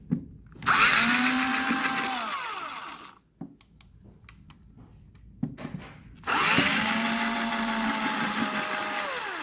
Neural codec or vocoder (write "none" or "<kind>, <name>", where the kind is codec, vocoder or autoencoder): none